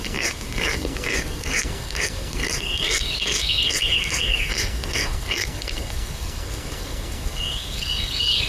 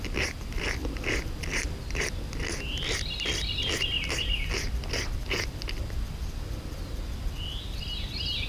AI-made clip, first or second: first